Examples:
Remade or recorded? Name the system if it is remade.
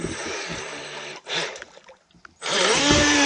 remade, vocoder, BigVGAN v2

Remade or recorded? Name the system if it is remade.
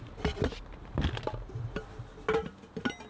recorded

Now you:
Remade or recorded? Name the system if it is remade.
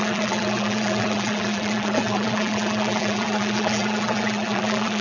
remade, vocoder, BigVGAN v2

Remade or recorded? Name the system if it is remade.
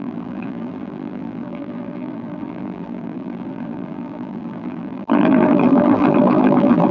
remade, vocoder, BigVGAN v2